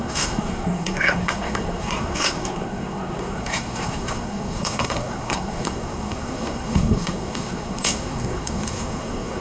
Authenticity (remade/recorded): remade